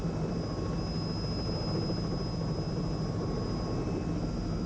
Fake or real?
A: real